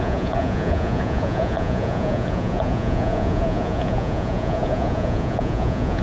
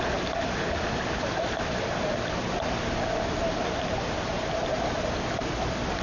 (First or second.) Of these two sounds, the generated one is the first